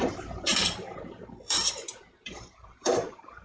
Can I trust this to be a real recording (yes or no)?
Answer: no